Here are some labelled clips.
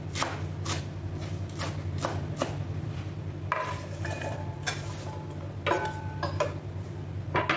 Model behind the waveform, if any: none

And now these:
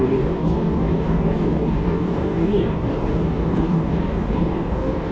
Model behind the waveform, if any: codec, DAC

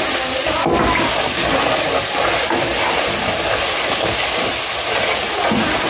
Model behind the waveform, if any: none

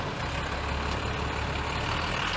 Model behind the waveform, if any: none